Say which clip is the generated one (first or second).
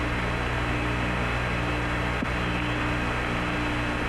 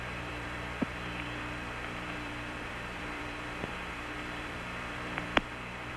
second